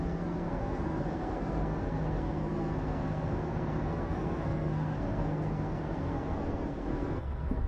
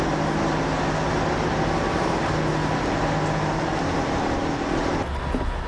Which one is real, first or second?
second